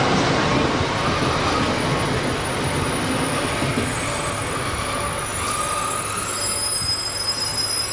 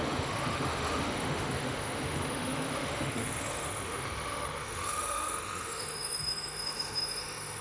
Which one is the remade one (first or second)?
second